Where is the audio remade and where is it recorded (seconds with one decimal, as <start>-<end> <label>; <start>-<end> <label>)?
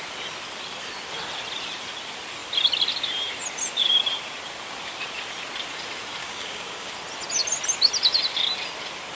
0.0-6.2 recorded; 6.2-6.9 remade; 6.9-9.1 recorded